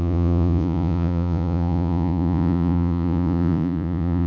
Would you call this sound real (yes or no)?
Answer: no